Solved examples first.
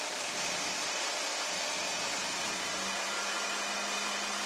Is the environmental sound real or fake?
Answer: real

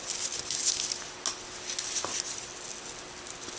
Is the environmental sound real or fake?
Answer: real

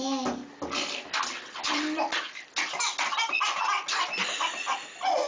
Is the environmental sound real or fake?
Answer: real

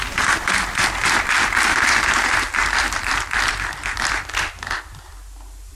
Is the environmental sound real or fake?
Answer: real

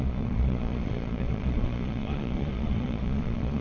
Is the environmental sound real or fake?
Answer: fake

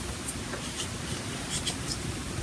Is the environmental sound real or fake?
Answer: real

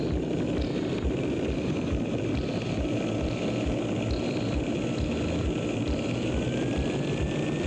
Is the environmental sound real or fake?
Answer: real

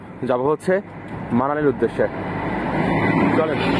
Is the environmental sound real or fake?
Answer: real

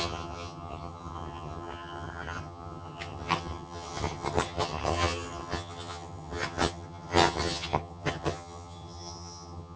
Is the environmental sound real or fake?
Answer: fake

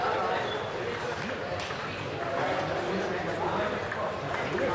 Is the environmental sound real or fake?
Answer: real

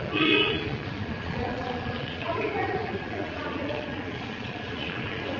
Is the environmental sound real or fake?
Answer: fake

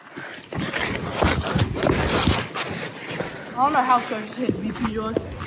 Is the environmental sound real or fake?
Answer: real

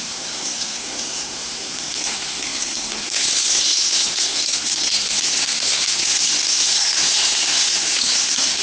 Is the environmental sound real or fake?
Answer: fake